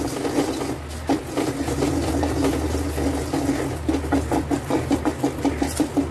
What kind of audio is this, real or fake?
real